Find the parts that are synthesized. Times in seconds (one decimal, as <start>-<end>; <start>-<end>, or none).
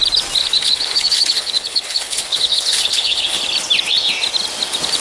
0.4-3.4